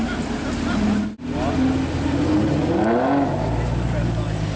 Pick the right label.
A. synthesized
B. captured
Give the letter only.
B